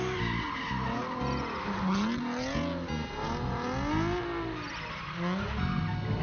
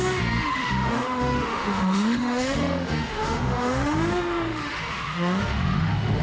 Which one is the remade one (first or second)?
second